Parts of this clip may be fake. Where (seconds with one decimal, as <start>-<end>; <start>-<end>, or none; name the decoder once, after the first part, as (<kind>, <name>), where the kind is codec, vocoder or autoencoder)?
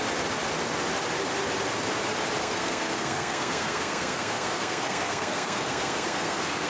2.4-6.7 (codec, SNAC)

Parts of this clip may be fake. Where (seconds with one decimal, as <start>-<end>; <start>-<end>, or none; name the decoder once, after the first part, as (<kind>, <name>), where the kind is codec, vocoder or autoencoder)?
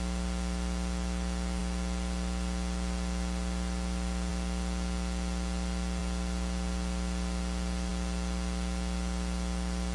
none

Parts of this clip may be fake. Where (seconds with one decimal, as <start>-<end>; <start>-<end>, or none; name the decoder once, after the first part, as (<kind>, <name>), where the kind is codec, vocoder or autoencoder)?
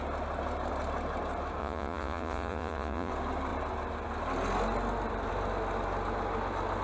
1.6-3.1 (vocoder, Vocos)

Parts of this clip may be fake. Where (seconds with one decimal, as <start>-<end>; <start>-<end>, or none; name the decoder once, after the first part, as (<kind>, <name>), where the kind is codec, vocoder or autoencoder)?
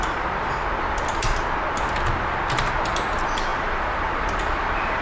3.5-4.4 (vocoder, BigVGAN v2)